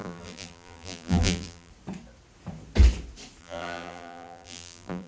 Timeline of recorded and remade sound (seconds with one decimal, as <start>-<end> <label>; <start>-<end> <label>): 0.0-1.7 remade; 1.7-3.4 recorded; 3.4-5.1 remade